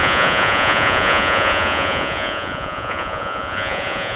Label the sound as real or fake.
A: fake